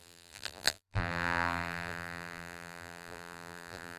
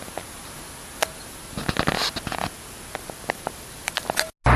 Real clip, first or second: second